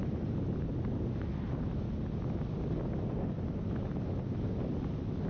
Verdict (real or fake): real